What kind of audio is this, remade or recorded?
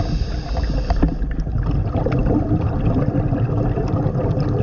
recorded